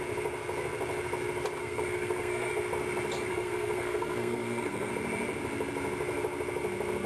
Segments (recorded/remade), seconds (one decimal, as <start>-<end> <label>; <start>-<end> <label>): 0.0-1.6 recorded; 1.6-2.5 remade; 2.5-3.3 recorded; 3.3-4.9 remade; 4.9-7.1 recorded